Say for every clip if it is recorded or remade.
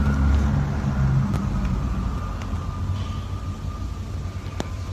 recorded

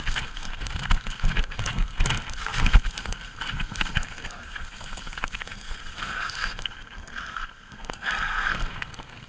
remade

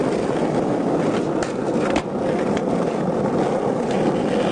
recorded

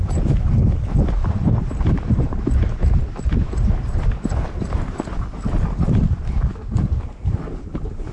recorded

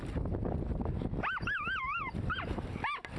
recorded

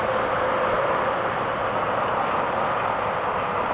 recorded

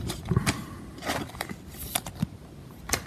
remade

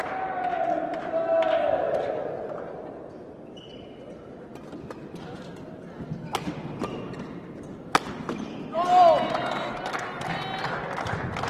recorded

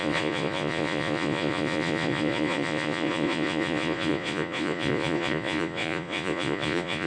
remade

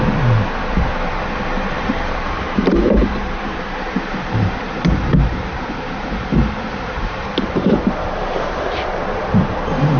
remade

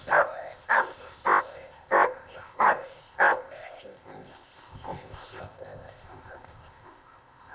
remade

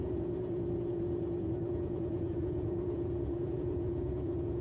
remade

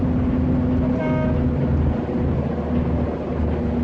recorded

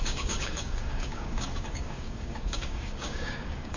remade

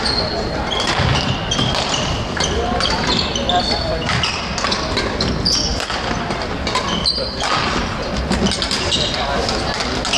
recorded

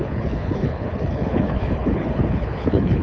remade